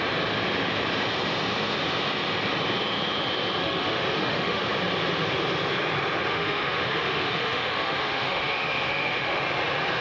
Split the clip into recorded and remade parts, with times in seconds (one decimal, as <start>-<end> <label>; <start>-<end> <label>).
0.0-3.6 recorded; 3.6-4.6 remade; 4.6-6.3 recorded; 6.3-9.4 remade; 9.4-10.0 recorded